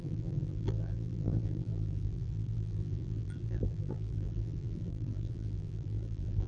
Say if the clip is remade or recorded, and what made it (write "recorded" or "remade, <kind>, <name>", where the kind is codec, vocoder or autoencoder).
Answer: remade, vocoder, BigVGAN v2